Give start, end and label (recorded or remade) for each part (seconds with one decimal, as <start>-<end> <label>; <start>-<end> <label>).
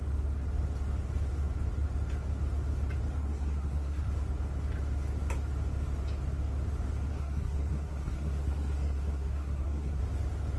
0.0-3.2 recorded; 3.2-4.1 remade; 4.1-7.1 recorded; 7.1-10.0 remade; 10.0-10.6 recorded